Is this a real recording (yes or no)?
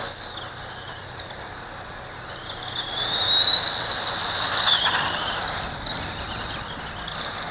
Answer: yes